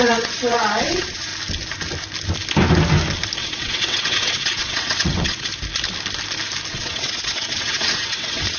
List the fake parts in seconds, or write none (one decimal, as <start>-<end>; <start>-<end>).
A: 0.0-1.3; 3.4-5.5; 6.7-8.6